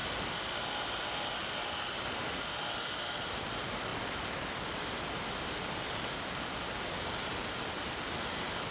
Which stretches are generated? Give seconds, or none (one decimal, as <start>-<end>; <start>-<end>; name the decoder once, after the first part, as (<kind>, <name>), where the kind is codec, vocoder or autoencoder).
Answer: none